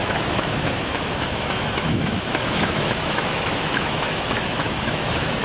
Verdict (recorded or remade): remade